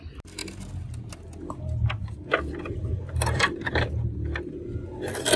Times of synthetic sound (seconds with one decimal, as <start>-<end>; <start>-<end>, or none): 2.9-3.7